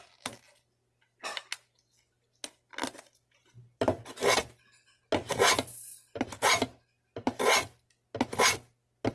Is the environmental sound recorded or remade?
recorded